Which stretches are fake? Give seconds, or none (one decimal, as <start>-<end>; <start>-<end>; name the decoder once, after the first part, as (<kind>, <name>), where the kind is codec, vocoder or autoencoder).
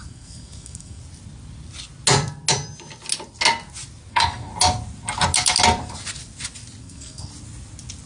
0.0-1.0 (codec, SNAC); 4.1-4.5; 6.8-7.3